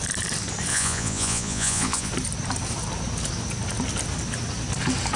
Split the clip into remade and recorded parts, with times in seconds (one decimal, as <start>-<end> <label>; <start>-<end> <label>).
0.0-0.7 recorded; 0.7-2.1 remade; 2.1-5.2 recorded